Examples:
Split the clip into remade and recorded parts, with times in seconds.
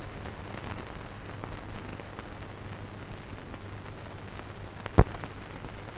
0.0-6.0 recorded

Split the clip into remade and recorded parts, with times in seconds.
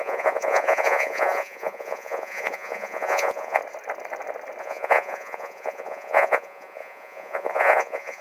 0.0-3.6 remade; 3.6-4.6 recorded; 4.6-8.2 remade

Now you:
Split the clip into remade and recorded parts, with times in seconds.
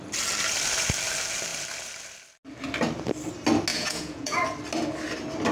0.0-3.7 recorded; 3.7-4.4 remade; 4.4-5.5 recorded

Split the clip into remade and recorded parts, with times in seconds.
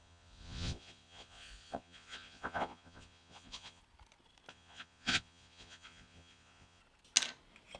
0.0-3.8 remade; 3.8-4.5 recorded; 4.5-6.8 remade; 6.8-7.8 recorded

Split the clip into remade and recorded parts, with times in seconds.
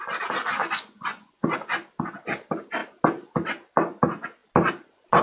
0.0-0.6 recorded; 0.6-1.4 remade; 1.4-5.2 recorded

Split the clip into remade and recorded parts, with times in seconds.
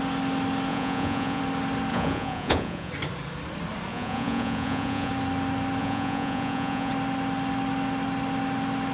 0.0-0.7 recorded; 0.7-1.4 remade; 1.4-1.9 recorded; 1.9-2.9 remade; 2.9-3.9 recorded; 3.9-5.1 remade; 5.1-5.8 recorded; 5.8-6.9 remade; 6.9-8.9 recorded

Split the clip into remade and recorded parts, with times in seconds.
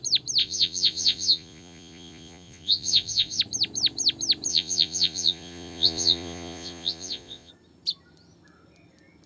0.0-0.4 recorded; 0.4-3.4 remade; 3.4-4.5 recorded; 4.5-7.5 remade; 7.5-9.3 recorded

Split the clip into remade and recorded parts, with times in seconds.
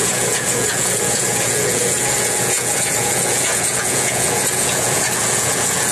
0.0-5.9 remade